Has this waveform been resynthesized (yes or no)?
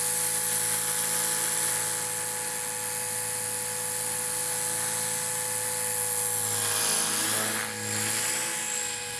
no